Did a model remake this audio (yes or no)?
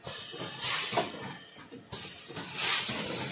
no